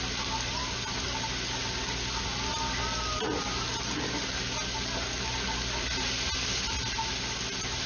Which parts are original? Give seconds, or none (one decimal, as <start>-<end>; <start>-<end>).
0.0-7.9